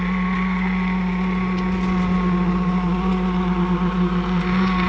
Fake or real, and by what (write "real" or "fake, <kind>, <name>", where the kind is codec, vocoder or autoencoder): real